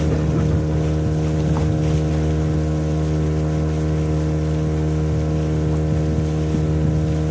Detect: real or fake real